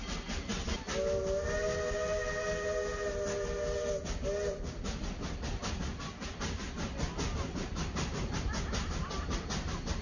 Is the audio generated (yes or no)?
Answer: no